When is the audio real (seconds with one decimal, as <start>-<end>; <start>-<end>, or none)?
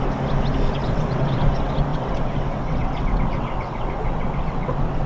0.0-0.8; 1.5-1.9